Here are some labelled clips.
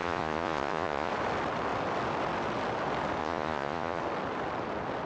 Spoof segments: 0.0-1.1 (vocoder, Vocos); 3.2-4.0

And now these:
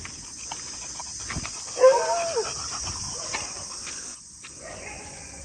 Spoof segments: 4.1-5.4 (vocoder, Vocos)

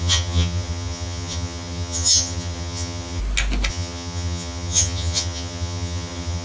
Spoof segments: 0.0-3.2 (vocoder, HiFi-GAN); 3.7-6.4

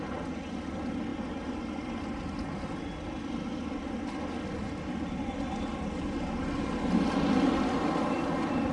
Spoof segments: none

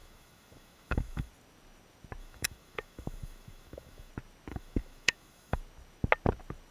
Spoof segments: 0.0-1.3 (autoencoder, DAC-VAE); 2.2-4.1; 4.5-5.6

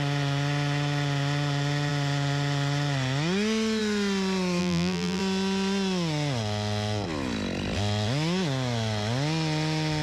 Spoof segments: 4.6-5.2 (vocoder, BigVGAN v2)